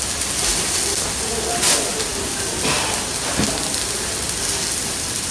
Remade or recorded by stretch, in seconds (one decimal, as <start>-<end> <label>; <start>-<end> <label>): 0.0-5.3 recorded

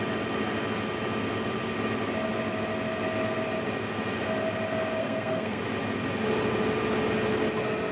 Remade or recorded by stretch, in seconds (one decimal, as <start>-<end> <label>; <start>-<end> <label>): 0.0-5.0 recorded; 5.0-5.6 remade; 5.6-7.9 recorded

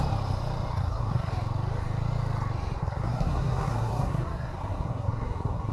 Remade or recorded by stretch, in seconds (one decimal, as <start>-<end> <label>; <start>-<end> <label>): 0.0-0.7 recorded; 0.7-1.3 remade; 1.3-2.8 recorded; 2.8-5.7 remade

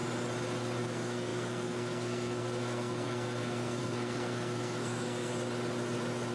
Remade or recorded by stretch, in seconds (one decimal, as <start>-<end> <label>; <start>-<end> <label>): 0.0-0.8 recorded; 0.8-5.3 remade; 5.3-6.3 recorded

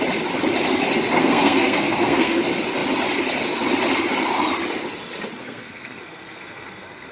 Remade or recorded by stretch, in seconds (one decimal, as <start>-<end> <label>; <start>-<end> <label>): 0.0-1.2 recorded; 1.2-2.4 remade; 2.4-5.4 recorded; 5.4-7.1 remade